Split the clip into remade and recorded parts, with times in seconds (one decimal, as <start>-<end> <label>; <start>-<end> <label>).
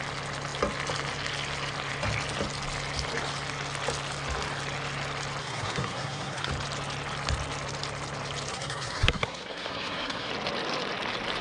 0.0-5.4 recorded; 5.4-6.5 remade; 6.5-8.5 recorded; 8.5-10.3 remade; 10.3-11.4 recorded